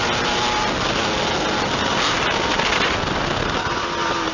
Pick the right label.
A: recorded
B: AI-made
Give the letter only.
A